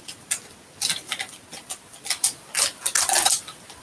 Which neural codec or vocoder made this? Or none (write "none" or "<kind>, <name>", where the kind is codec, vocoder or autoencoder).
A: none